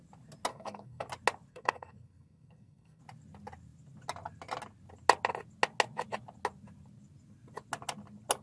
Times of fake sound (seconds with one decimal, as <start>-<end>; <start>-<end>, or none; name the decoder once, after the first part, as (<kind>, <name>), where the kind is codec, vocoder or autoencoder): 0.5-1.1 (codec, SNAC); 1.5-3.0